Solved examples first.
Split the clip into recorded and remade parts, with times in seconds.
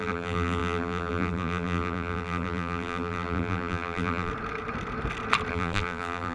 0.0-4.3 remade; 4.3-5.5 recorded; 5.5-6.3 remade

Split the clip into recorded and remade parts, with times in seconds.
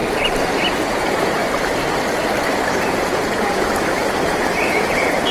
0.0-0.8 recorded; 0.8-1.4 remade; 1.4-3.0 recorded; 3.0-3.7 remade; 3.7-4.3 recorded; 4.3-5.3 remade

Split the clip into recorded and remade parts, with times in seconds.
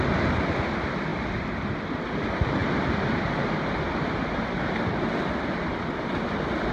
0.0-6.7 recorded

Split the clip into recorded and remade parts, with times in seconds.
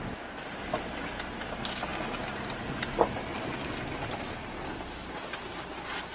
0.0-6.1 recorded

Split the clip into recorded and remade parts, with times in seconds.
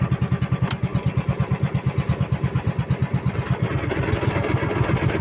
0.0-0.9 recorded; 0.9-4.0 remade; 4.0-5.2 recorded